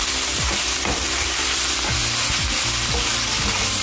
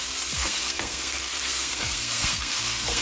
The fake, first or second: second